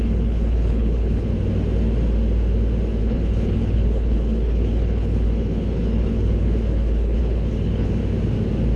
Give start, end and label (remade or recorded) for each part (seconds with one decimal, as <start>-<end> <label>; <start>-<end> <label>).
0.0-1.3 remade; 1.3-3.0 recorded; 3.0-8.0 remade; 8.0-8.8 recorded